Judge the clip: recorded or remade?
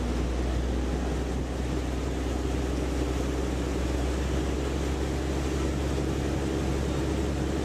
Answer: recorded